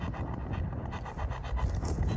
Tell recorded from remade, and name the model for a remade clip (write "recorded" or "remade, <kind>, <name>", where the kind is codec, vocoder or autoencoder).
recorded